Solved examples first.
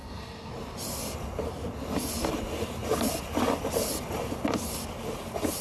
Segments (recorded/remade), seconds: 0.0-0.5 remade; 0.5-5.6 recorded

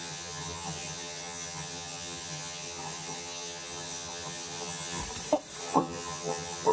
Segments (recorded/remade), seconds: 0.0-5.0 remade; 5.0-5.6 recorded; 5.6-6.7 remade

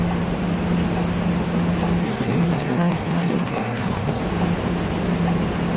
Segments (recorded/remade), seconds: 0.0-2.0 recorded; 2.0-4.2 remade; 4.2-5.8 recorded

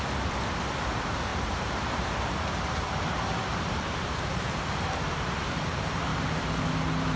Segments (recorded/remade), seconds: 0.0-1.3 recorded; 1.3-5.6 remade; 5.6-6.1 recorded; 6.1-6.7 remade; 6.7-7.2 recorded

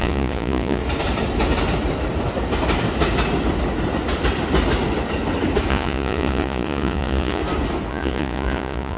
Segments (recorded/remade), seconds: 0.0-0.8 remade; 0.8-5.7 recorded; 5.7-7.4 remade; 7.4-7.9 recorded; 7.9-9.0 remade

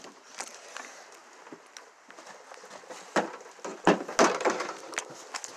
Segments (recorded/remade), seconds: 0.0-5.6 recorded

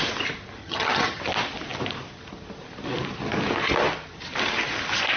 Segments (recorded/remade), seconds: 0.0-0.6 recorded; 0.6-1.2 remade; 1.2-5.2 recorded